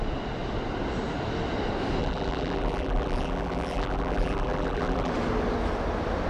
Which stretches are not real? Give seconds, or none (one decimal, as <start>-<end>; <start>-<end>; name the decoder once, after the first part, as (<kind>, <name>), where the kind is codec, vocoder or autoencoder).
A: 2.0-5.1 (vocoder, BigVGAN v2)